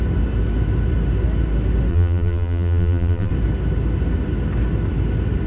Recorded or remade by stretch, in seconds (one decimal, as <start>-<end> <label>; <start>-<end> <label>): 0.0-1.9 recorded; 1.9-3.3 remade; 3.3-5.5 recorded